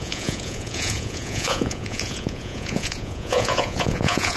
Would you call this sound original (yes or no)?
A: no